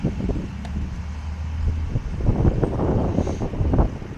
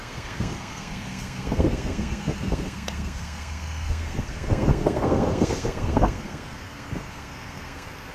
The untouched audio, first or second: first